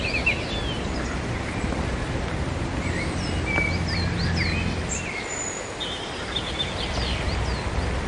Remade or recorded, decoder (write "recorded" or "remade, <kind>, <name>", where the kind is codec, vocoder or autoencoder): recorded